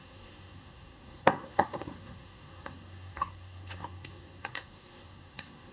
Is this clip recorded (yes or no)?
no